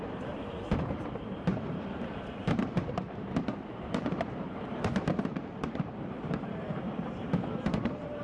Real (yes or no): no